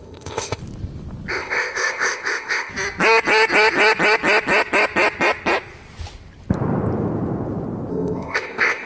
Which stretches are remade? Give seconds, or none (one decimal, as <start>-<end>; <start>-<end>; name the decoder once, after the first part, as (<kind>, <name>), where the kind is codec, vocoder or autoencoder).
0.0-0.6 (codec, ZipCodec); 1.3-2.7; 7.9-8.9